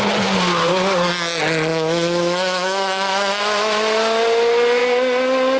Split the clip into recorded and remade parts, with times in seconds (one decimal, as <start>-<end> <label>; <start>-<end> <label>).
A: 0.0-1.7 recorded; 1.7-3.4 remade; 3.4-5.6 recorded